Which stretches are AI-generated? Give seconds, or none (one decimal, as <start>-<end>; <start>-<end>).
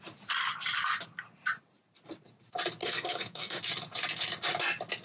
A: 2.8-3.6